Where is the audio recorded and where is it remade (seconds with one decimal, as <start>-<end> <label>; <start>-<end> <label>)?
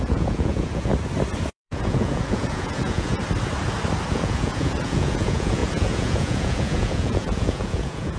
0.0-0.9 remade; 0.9-1.5 recorded; 1.5-3.2 remade; 3.2-4.1 recorded; 4.1-8.2 remade